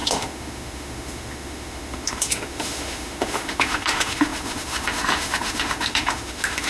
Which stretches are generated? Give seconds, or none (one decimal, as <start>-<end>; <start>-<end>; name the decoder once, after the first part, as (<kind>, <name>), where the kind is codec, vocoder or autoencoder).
0.0-6.7 (autoencoder, DAC-VAE)